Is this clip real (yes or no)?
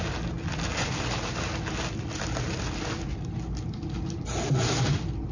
yes